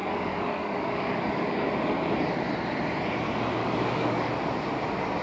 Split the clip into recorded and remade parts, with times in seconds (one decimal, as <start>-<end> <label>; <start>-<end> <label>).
0.0-1.7 remade; 1.7-3.6 recorded; 3.6-4.3 remade; 4.3-5.2 recorded

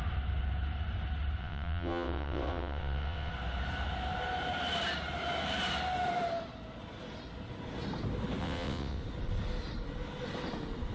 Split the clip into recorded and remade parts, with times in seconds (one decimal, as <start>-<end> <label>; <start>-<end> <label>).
0.0-1.4 recorded; 1.4-3.3 remade; 3.3-8.4 recorded; 8.4-9.0 remade; 9.0-10.9 recorded

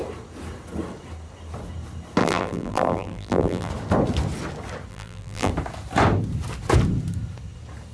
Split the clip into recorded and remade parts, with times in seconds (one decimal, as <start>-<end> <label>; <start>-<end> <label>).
0.0-2.2 recorded; 2.2-3.7 remade; 3.7-4.9 recorded; 4.9-5.5 remade; 5.5-7.9 recorded

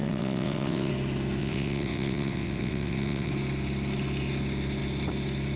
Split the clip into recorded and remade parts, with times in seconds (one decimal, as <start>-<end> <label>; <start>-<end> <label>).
0.0-0.9 remade; 0.9-1.4 recorded; 1.4-3.3 remade; 3.3-5.6 recorded

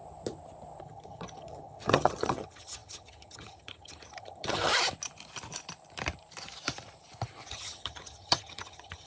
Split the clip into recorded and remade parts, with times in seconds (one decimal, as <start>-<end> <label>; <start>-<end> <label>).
0.0-0.8 recorded; 0.8-4.7 remade; 4.7-7.5 recorded; 7.5-9.1 remade

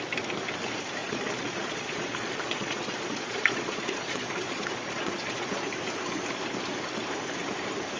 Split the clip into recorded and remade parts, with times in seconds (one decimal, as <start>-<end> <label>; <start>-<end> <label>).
0.0-1.0 recorded; 1.0-5.7 remade; 5.7-8.0 recorded